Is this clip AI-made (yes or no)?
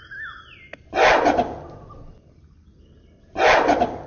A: no